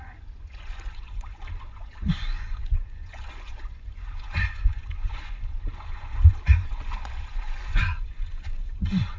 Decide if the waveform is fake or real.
fake